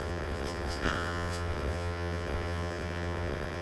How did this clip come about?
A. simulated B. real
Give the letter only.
A